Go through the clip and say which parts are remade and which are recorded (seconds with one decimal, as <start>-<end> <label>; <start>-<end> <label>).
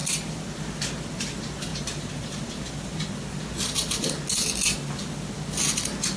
0.0-6.2 recorded